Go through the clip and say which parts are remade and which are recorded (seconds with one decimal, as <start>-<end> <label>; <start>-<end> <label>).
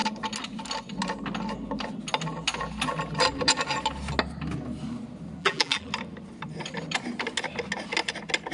0.0-5.4 recorded; 5.4-5.9 remade; 5.9-8.5 recorded